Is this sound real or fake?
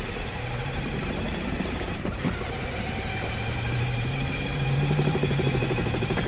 fake